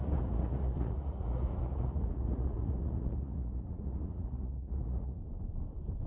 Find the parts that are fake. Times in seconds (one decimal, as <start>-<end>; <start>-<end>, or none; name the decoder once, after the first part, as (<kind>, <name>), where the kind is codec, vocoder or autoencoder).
0.0-5.2 (vocoder, Vocos)